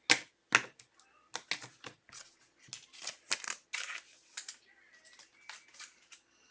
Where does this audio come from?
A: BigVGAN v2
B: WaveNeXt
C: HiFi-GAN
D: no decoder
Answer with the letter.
D